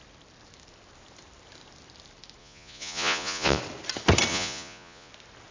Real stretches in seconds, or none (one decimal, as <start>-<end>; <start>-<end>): 0.0-2.4; 3.6-4.3; 5.1-5.5